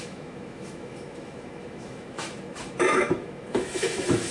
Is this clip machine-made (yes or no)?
yes